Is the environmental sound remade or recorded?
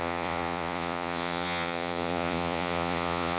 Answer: remade